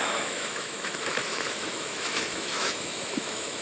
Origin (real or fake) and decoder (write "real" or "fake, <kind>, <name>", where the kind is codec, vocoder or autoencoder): fake, autoencoder, DAC-VAE